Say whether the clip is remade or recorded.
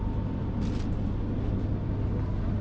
recorded